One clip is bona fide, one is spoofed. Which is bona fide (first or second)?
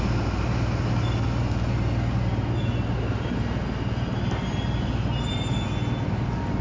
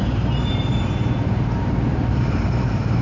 first